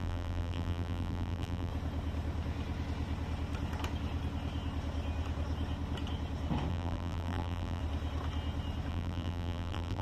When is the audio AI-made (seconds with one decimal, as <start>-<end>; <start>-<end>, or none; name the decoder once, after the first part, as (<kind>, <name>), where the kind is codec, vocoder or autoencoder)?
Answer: 0.0-1.7 (vocoder, BigVGAN v2); 6.7-7.8; 8.9-10.0